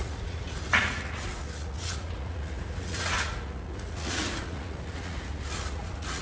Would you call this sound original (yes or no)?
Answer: no